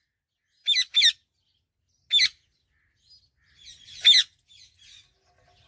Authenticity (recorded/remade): recorded